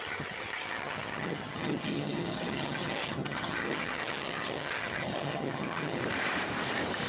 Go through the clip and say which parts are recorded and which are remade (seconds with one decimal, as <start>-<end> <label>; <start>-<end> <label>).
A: 0.0-6.0 remade; 6.0-7.1 recorded